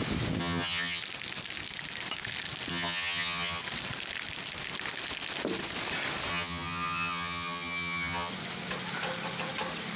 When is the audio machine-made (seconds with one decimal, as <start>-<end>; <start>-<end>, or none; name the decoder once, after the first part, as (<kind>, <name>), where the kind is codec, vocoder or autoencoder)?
0.4-1.0 (vocoder, HiFi-GAN); 2.7-3.6; 6.3-8.3